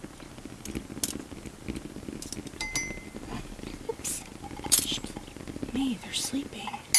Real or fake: real